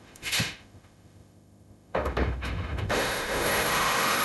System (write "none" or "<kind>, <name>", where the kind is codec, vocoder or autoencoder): autoencoder, DAC-VAE